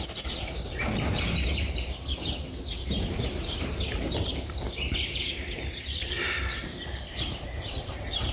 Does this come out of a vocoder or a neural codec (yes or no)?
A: yes